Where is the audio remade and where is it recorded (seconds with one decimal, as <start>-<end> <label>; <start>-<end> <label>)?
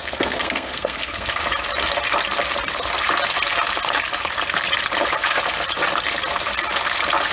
0.0-1.4 remade; 1.4-7.3 recorded